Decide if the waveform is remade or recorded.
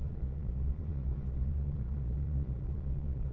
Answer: remade